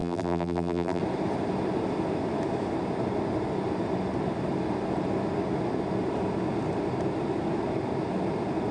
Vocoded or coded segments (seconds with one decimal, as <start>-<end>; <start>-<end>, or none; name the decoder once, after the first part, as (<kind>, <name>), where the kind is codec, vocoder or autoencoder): 0.0-1.0 (vocoder, BigVGAN v2)